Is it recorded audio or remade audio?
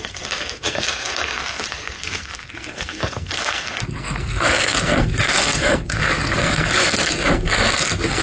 remade